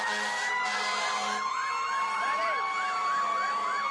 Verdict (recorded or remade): remade